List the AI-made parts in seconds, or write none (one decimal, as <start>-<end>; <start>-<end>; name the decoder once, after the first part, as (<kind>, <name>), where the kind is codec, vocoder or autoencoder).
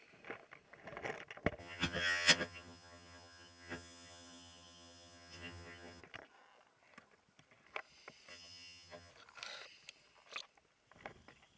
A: 1.6-6.0 (vocoder, HiFi-GAN); 8.3-9.1